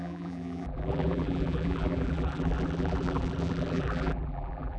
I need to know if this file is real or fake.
fake